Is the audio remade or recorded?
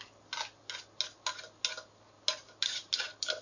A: recorded